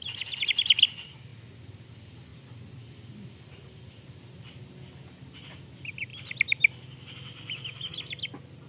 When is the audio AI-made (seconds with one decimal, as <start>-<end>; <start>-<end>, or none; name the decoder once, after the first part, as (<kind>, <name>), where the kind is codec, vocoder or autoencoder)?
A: none